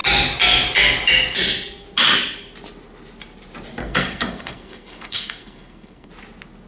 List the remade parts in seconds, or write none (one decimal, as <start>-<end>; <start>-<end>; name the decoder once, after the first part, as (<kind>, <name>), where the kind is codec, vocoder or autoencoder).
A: 3.8-6.1 (codec, SNAC)